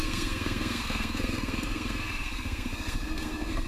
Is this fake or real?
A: fake